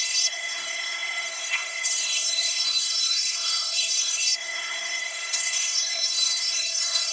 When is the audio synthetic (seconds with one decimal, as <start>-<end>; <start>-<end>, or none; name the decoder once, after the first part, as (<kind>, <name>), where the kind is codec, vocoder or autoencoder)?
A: 0.0-7.1 (codec, SNAC)